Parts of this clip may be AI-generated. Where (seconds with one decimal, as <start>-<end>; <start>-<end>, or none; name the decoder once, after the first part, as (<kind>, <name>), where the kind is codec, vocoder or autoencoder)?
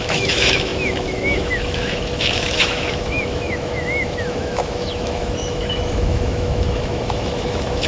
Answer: 0.0-7.9 (autoencoder, DAC-VAE)